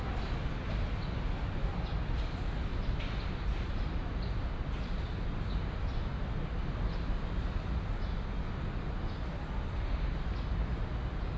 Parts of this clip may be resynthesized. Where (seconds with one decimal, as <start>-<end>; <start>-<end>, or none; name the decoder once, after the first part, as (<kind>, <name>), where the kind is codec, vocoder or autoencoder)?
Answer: none